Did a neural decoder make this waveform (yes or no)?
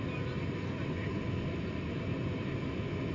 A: no